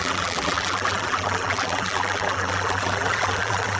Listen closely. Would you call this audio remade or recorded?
remade